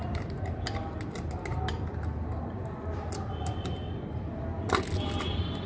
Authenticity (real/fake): real